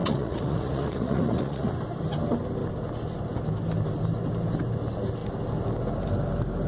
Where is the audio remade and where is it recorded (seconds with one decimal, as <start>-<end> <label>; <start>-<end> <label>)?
0.0-1.7 remade; 1.7-6.7 recorded